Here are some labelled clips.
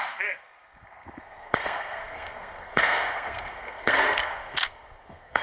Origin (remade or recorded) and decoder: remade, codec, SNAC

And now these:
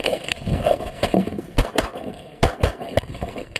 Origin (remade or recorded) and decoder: remade, codec, SNAC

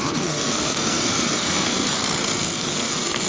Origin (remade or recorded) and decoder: remade, codec, SNAC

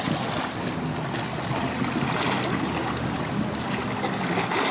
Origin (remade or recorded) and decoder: recorded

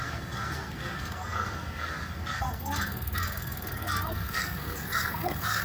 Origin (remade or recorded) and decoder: remade, codec, SNAC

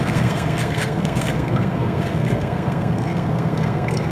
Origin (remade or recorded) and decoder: remade, codec, SNAC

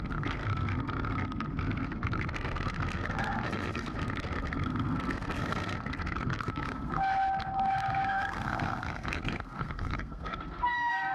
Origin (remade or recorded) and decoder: remade, codec, SNAC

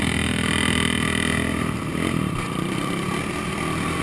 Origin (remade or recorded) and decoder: recorded